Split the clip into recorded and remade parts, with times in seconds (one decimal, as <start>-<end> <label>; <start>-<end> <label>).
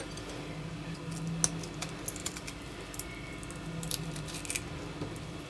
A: 0.0-2.2 recorded; 2.2-3.3 remade; 3.3-5.5 recorded